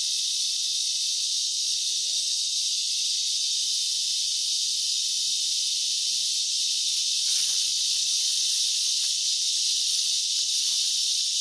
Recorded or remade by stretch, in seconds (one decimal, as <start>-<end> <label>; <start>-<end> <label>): 0.0-3.6 remade; 3.6-6.4 recorded; 6.4-11.4 remade